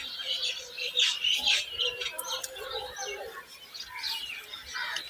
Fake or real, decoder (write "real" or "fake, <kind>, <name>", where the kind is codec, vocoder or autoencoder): real